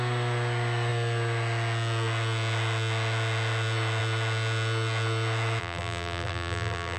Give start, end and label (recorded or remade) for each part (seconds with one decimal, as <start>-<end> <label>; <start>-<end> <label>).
0.0-5.6 recorded; 5.6-7.0 remade